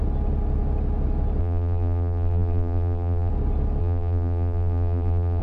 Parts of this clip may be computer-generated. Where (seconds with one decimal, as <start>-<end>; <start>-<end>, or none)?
1.4-3.3; 3.8-5.4